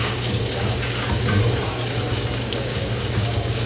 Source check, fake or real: fake